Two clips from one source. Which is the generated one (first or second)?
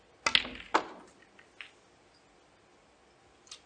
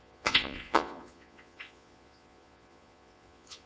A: second